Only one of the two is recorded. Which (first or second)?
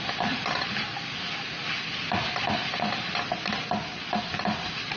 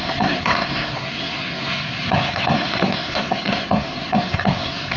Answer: first